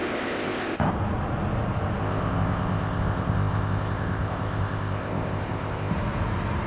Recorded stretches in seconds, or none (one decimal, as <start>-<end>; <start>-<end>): 0.9-2.0; 5.9-6.7